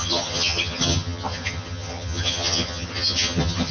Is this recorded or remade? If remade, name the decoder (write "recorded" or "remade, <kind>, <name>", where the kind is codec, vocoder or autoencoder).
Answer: remade, vocoder, HiFi-GAN